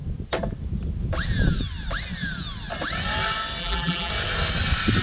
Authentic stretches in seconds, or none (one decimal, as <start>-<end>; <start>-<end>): 0.0-3.6; 4.1-5.0